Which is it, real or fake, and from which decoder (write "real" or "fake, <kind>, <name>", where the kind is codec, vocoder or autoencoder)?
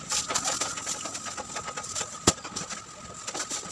real